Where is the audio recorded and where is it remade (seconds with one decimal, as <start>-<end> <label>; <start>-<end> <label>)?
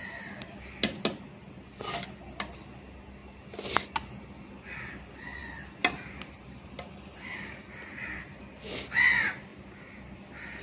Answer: 0.0-10.6 recorded